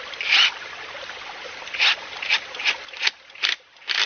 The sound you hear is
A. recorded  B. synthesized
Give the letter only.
A